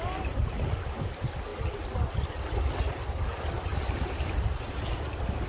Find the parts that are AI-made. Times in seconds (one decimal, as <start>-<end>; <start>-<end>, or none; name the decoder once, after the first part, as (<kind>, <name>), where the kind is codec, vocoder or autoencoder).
none